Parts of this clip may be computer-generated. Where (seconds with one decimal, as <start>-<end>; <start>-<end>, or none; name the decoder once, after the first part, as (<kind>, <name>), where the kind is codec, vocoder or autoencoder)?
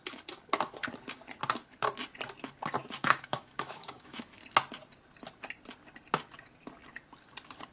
2.8-4.4 (autoencoder, DAC-VAE)